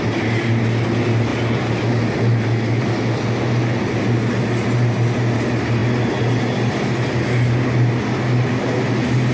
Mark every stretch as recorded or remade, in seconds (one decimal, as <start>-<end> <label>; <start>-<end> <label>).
0.0-9.3 recorded